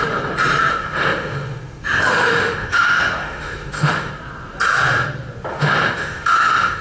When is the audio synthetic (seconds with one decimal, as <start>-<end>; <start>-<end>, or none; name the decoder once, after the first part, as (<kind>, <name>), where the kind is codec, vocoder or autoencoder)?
0.7-4.1 (autoencoder, DAC-VAE); 5.5-6.8